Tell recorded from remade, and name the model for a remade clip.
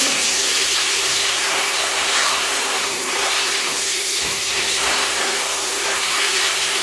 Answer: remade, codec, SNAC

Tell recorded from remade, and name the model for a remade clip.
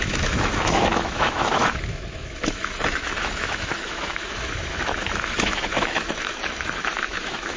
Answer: remade, autoencoder, DAC-VAE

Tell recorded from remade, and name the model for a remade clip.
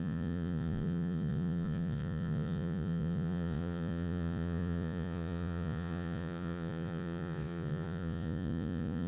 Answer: remade, vocoder, Vocos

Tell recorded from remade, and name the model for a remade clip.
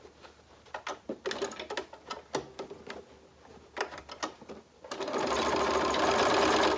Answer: recorded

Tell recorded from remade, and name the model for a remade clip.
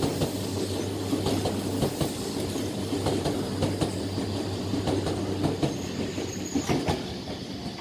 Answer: recorded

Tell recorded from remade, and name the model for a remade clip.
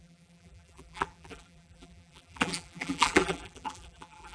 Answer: remade, vocoder, BigVGAN v2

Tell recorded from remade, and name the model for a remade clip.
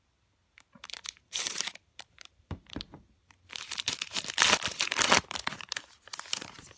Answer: remade, vocoder, BigVGAN v2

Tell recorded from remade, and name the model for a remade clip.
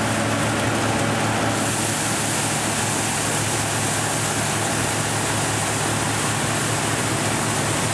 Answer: recorded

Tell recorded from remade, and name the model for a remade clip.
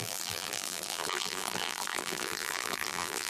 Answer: remade, vocoder, BigVGAN v2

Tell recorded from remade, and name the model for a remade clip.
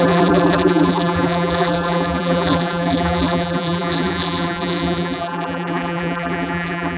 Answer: remade, vocoder, BigVGAN v2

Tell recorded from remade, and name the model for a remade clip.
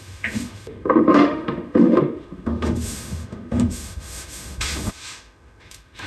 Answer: remade, autoencoder, DAC-VAE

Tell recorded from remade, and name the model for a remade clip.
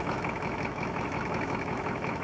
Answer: remade, autoencoder, DAC-VAE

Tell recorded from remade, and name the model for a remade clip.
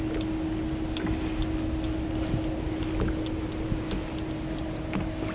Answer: recorded